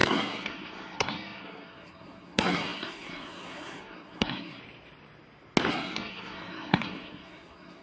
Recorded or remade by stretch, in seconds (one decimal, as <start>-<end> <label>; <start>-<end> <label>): 0.0-4.6 remade; 4.6-5.7 recorded; 5.7-7.8 remade